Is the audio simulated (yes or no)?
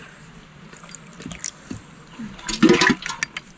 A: no